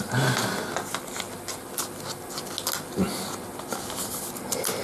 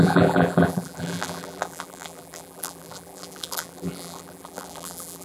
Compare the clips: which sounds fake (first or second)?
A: second